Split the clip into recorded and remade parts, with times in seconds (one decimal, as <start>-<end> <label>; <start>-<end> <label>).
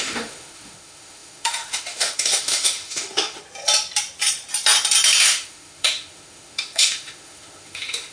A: 0.0-3.4 remade; 3.4-5.2 recorded; 5.2-8.1 remade